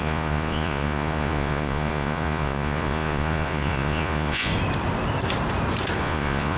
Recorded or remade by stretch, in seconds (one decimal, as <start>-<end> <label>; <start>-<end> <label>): 0.0-4.5 remade; 4.5-6.0 recorded; 6.0-6.6 remade